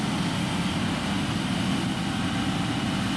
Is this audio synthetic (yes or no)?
no